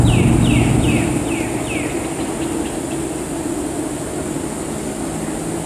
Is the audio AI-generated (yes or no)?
no